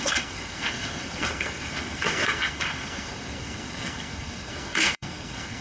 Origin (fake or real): fake